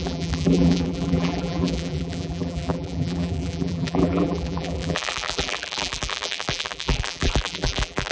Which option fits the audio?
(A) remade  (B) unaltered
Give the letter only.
A